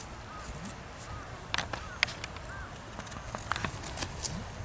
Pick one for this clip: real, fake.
real